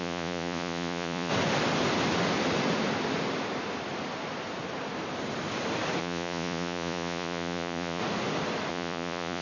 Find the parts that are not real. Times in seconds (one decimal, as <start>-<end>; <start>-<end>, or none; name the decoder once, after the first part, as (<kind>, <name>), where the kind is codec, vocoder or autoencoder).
0.0-1.3 (vocoder, Vocos); 6.0-8.0; 8.7-9.4